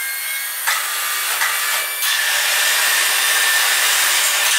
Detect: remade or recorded recorded